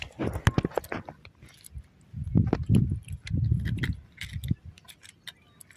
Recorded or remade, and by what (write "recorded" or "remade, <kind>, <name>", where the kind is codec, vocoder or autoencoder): recorded